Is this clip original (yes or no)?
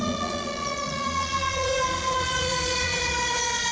no